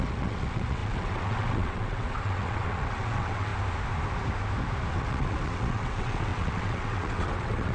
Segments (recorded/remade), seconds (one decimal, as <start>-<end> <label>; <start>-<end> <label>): 0.0-3.5 remade; 3.5-4.9 recorded; 4.9-7.7 remade